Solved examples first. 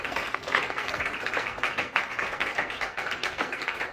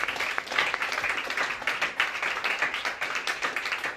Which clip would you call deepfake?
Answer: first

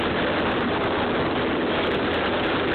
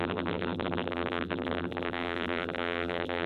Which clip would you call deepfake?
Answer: second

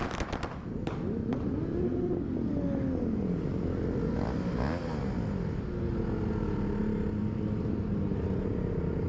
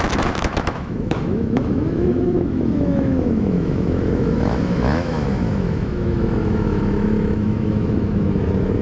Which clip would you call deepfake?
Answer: second